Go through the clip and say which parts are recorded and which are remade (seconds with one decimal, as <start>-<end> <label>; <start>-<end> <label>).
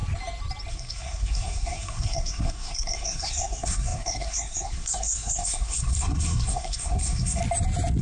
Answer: 0.0-0.7 recorded; 0.7-7.4 remade; 7.4-8.0 recorded